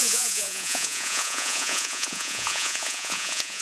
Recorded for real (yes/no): no